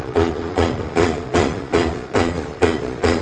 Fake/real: fake